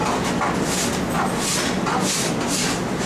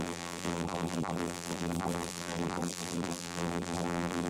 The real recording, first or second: first